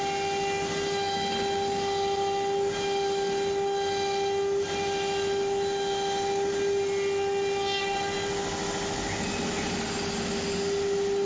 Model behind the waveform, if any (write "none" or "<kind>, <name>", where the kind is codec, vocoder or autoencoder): none